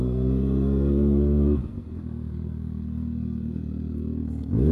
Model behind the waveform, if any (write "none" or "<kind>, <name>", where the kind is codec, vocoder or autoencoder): codec, SNAC